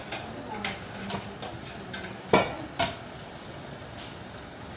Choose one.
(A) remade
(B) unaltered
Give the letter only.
B